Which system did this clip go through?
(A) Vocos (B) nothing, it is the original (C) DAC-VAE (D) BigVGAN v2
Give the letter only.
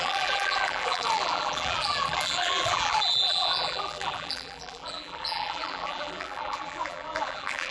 D